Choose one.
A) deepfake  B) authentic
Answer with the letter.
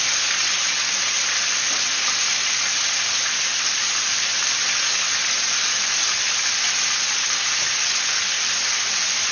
B